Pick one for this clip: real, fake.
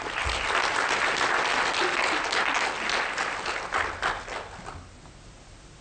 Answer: real